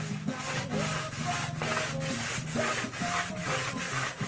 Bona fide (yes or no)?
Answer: yes